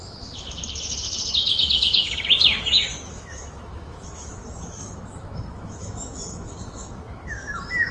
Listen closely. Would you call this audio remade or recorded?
remade